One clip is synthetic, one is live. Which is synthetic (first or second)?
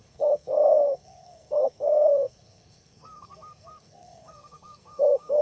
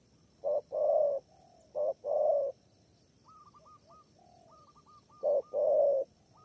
first